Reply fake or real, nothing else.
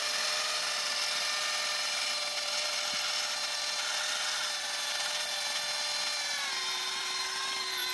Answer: real